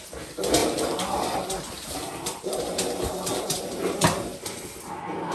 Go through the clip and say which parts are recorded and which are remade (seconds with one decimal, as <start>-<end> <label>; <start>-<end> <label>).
0.0-0.6 recorded; 0.6-3.6 remade; 3.6-5.3 recorded